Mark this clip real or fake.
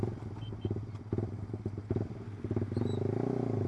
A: real